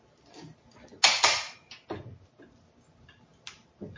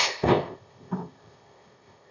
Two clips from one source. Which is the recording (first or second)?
first